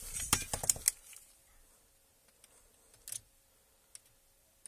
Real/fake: real